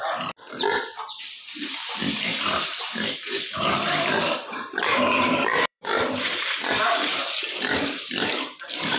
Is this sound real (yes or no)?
no